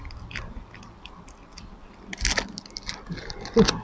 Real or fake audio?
real